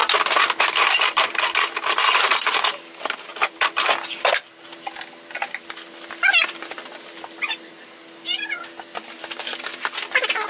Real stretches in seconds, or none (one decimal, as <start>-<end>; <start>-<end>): 1.5-3.3; 4.9-10.5